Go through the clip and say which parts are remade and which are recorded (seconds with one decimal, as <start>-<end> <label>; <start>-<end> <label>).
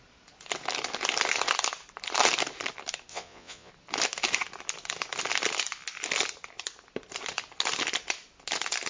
0.0-3.1 recorded; 3.1-3.7 remade; 3.7-8.9 recorded